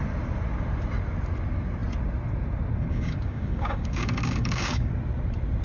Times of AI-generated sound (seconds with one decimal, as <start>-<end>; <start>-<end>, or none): 2.9-4.9